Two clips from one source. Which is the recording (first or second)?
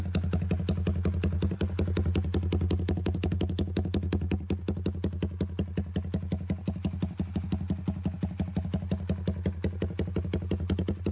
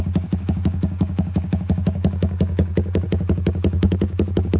first